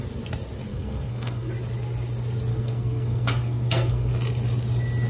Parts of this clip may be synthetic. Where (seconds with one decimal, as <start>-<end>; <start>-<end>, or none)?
0.7-1.5; 2.5-4.1